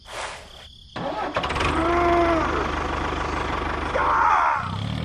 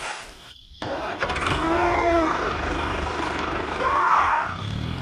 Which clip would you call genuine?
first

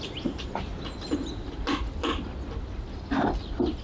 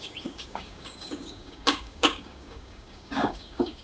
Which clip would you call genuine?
first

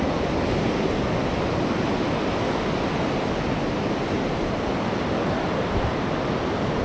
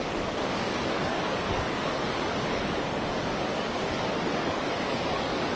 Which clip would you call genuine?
first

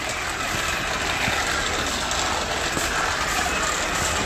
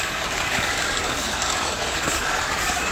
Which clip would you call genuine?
first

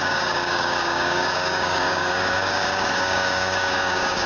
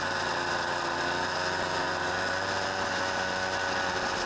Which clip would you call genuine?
second